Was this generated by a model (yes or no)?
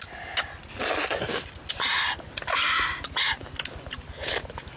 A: no